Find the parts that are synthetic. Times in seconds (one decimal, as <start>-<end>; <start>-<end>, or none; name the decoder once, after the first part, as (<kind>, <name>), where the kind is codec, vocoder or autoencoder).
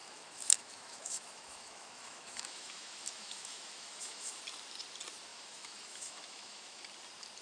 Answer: 0.0-4.4 (autoencoder, DAC-VAE); 5.3-6.8